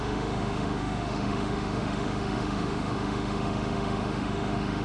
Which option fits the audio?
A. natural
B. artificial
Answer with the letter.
B